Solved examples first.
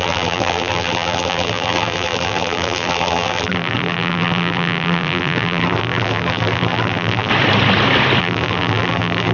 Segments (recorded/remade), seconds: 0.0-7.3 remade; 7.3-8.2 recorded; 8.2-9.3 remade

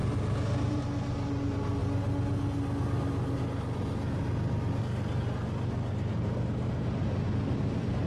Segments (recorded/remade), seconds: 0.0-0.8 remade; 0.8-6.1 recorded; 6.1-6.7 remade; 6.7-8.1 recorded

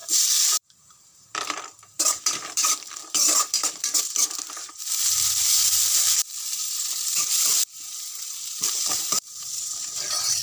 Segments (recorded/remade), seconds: 0.0-10.4 remade

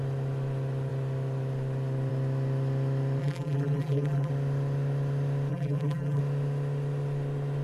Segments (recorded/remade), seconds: 0.0-3.2 recorded; 3.2-4.3 remade; 4.3-5.5 recorded; 5.5-6.2 remade; 6.2-7.6 recorded

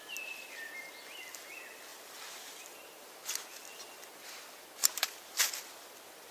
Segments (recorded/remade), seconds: 0.0-1.9 recorded; 1.9-3.1 remade; 3.1-4.8 recorded; 4.8-5.5 remade; 5.5-6.3 recorded